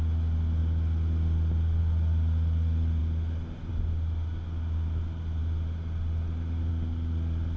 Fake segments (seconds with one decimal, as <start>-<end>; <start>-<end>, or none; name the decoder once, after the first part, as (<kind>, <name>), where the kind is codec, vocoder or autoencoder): none